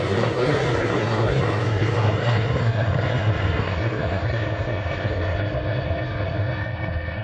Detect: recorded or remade remade